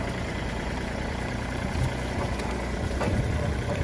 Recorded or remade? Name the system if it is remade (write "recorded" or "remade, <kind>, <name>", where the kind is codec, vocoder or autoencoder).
remade, vocoder, Vocos